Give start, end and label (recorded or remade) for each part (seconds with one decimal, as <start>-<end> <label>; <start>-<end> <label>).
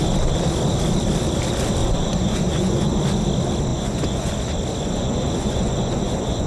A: 0.0-1.8 recorded; 1.8-2.9 remade; 2.9-3.7 recorded; 3.7-4.3 remade; 4.3-4.8 recorded; 4.8-6.5 remade